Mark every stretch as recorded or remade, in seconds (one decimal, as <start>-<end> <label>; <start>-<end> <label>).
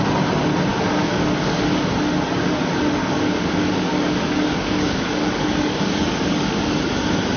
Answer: 0.0-0.7 recorded; 0.7-1.9 remade; 1.9-3.0 recorded; 3.0-6.6 remade; 6.6-7.4 recorded